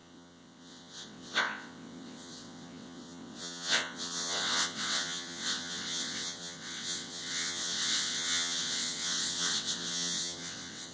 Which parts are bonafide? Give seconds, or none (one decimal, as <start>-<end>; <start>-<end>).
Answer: none